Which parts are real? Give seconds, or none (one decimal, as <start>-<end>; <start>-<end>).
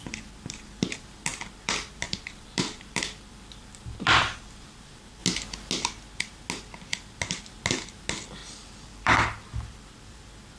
0.0-1.3; 4.2-8.4; 10.0-10.6